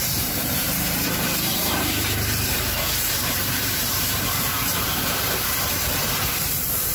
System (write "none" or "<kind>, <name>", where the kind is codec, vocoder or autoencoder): vocoder, BigVGAN v2